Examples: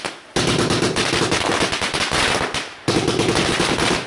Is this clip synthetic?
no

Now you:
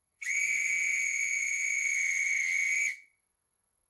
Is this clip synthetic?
yes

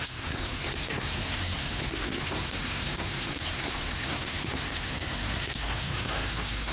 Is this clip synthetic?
yes